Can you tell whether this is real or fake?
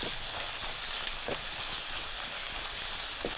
real